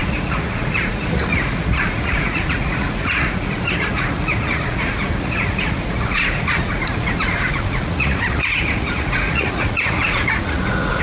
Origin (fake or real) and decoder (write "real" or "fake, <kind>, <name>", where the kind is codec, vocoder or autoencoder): fake, vocoder, Vocos